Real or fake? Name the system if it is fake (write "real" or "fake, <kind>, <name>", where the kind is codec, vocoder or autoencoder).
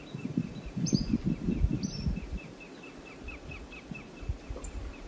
real